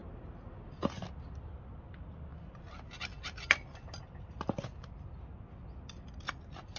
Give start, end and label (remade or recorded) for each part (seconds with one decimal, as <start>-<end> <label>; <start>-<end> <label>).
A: 0.0-0.5 remade; 0.5-6.8 recorded